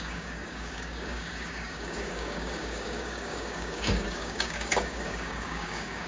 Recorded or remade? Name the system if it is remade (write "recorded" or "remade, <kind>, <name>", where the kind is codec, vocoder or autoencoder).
remade, codec, DAC